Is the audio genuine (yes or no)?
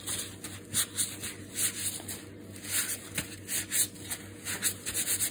yes